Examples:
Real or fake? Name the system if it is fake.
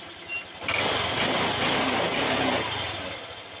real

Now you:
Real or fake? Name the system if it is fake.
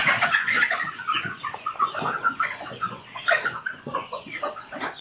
fake, vocoder, Vocos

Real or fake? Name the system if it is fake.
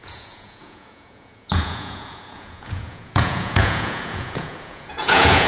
fake, vocoder, Vocos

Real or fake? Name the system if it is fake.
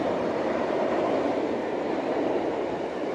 fake, vocoder, BigVGAN v2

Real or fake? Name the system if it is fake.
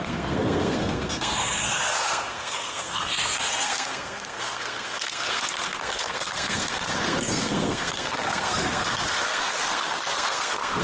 fake, codec, SNAC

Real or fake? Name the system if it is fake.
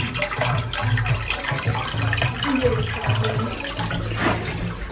real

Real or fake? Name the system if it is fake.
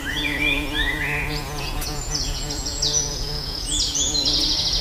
fake, vocoder, Vocos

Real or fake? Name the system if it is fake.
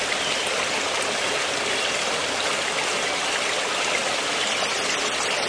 real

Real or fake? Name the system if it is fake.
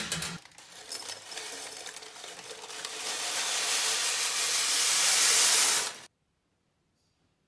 real